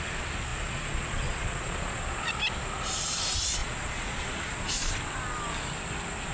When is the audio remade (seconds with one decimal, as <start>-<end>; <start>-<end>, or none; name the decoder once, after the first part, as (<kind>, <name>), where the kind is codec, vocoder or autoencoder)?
0.5-2.3 (vocoder, Vocos); 3.6-4.9